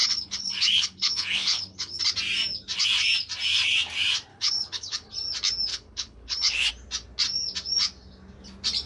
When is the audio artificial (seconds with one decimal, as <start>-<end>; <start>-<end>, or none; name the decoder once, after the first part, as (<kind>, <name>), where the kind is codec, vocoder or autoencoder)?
0.0-2.0 (codec, HILCodec); 4.3-5.1; 5.7-6.7